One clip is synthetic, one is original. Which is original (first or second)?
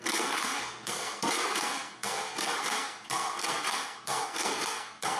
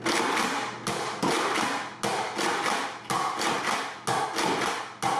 second